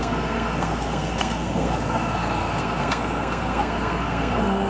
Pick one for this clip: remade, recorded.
remade